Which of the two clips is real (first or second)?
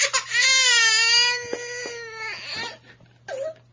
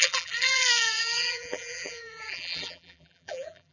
first